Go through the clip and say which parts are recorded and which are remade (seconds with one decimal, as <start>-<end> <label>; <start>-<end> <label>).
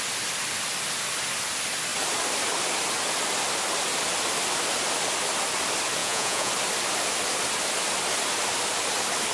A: 0.0-6.0 recorded; 6.0-6.5 remade; 6.5-9.3 recorded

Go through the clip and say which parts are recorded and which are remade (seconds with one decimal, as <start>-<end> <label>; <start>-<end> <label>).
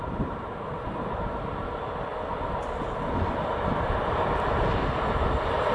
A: 0.0-2.1 remade; 2.1-5.7 recorded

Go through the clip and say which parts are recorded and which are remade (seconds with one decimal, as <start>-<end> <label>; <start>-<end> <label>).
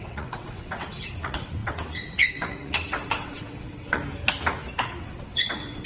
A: 0.0-4.0 remade; 4.0-5.0 recorded; 5.0-5.9 remade